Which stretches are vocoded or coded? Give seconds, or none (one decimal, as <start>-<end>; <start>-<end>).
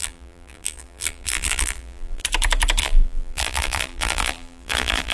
0.0-2.2; 2.8-5.1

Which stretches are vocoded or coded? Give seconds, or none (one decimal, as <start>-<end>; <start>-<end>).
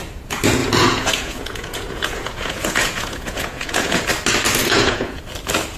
0.6-4.1; 4.6-5.2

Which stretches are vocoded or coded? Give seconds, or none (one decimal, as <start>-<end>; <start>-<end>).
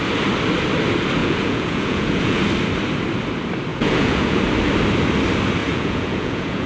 1.2-2.4; 3.7-4.4; 5.6-6.7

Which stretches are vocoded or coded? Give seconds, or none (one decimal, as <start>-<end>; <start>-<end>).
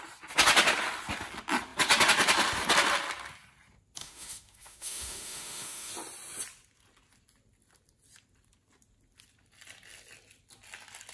4.0-5.9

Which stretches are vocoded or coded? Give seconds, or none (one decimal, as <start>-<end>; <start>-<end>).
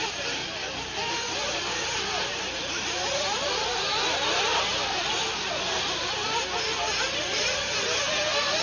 0.0-0.4; 1.1-6.2; 7.2-8.6